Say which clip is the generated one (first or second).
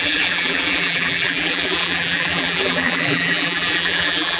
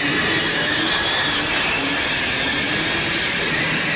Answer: first